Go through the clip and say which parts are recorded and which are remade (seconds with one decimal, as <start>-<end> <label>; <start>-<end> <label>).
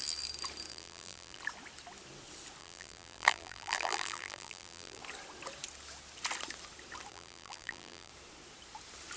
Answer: 0.0-0.7 recorded; 0.7-1.4 remade; 1.4-2.6 recorded; 2.6-5.0 remade; 5.0-7.1 recorded; 7.1-8.1 remade; 8.1-9.2 recorded